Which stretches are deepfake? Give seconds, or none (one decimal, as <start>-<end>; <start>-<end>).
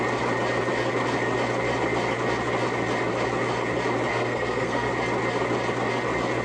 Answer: 4.1-4.9